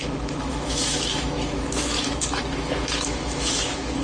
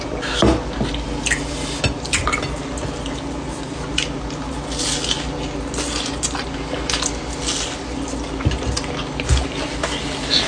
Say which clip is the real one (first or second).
second